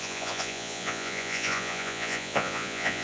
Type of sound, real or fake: fake